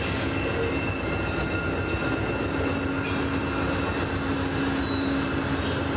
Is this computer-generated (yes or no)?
no